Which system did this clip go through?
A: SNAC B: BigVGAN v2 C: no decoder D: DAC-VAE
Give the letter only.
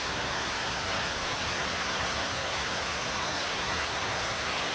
A